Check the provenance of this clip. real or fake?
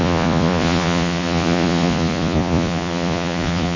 fake